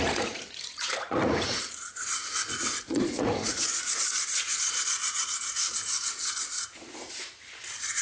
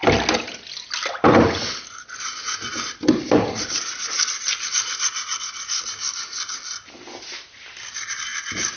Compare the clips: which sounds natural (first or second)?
second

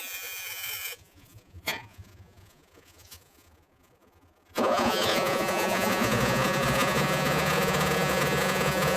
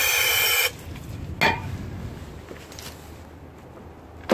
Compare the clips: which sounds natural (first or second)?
second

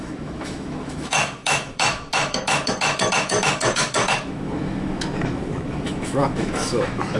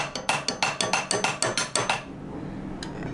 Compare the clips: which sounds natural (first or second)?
second